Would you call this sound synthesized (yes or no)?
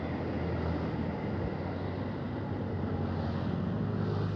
no